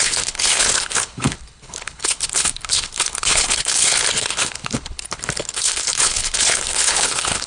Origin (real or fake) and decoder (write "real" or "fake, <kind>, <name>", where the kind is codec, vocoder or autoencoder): fake, codec, HILCodec